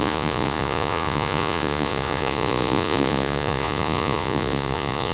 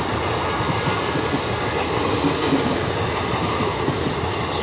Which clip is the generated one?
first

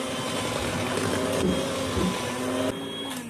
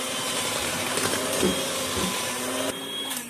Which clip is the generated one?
second